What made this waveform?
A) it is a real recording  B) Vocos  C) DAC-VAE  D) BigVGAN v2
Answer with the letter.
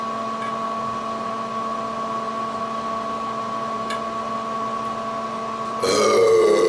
A